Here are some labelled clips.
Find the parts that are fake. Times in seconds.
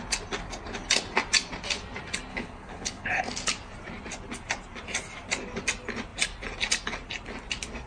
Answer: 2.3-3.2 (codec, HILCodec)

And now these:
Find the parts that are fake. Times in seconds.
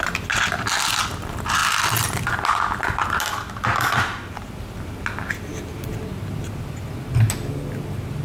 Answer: none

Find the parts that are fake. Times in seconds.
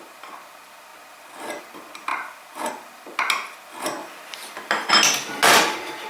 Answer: none